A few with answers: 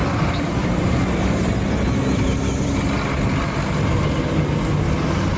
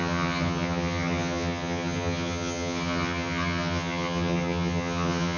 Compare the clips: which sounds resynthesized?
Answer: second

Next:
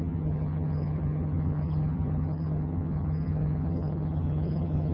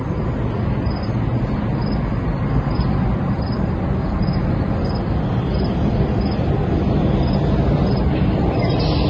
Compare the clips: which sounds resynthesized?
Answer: first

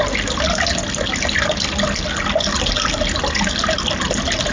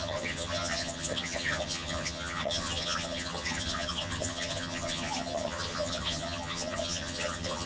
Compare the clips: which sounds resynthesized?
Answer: second